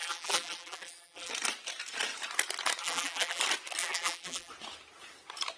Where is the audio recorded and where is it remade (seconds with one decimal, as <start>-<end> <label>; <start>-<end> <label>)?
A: 0.0-1.3 remade; 1.3-2.8 recorded; 2.8-3.4 remade; 3.4-3.8 recorded; 3.8-4.5 remade; 4.5-5.6 recorded